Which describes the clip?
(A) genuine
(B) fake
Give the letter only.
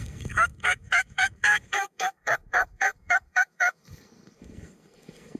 B